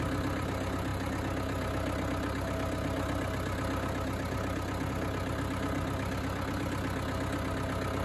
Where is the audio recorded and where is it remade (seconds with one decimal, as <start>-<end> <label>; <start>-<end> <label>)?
0.0-8.0 recorded